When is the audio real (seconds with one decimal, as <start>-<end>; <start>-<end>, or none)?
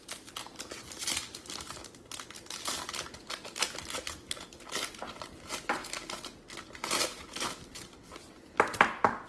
0.0-9.3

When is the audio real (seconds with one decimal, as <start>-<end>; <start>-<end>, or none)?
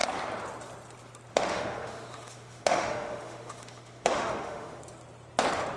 0.0-1.3; 4.8-5.8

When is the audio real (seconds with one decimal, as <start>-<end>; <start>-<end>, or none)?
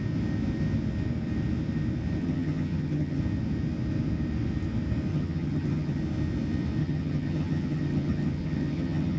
0.0-2.2; 3.2-5.1; 6.0-6.8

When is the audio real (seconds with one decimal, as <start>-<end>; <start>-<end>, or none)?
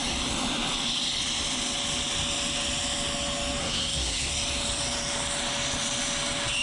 0.0-3.6; 4.3-6.6